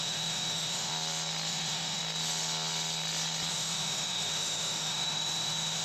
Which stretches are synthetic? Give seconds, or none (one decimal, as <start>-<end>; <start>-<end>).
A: 0.0-0.9; 1.5-2.0; 3.5-5.8